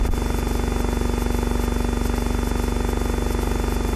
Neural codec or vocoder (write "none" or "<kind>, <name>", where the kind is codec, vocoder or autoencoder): none